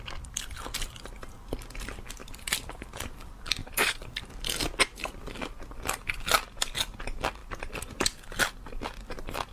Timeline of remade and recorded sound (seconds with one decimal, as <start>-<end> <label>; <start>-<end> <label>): 0.0-2.2 recorded; 2.2-2.8 remade; 2.8-3.6 recorded; 3.6-4.2 remade; 4.2-9.5 recorded